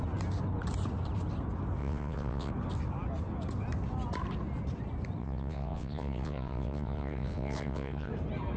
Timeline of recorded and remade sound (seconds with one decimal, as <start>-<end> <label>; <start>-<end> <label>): 0.0-1.8 recorded; 1.8-2.5 remade; 2.5-5.2 recorded; 5.2-8.1 remade; 8.1-8.6 recorded